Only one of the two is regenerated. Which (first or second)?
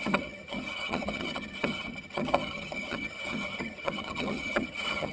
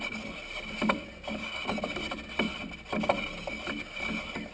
first